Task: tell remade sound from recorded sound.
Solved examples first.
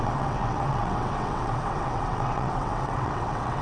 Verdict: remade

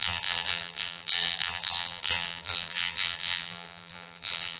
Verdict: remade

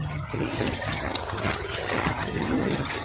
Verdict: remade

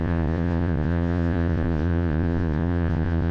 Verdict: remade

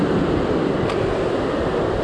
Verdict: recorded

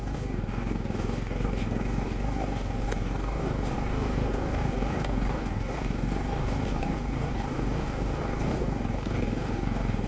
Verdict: remade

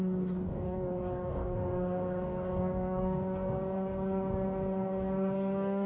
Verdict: remade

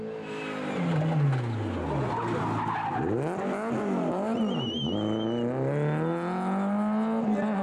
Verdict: recorded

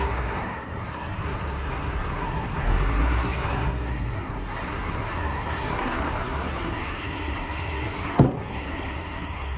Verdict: remade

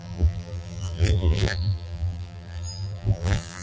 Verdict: remade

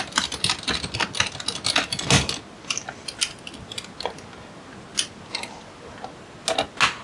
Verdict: recorded